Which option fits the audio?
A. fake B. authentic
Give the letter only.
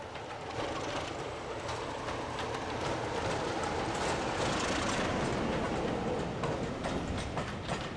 B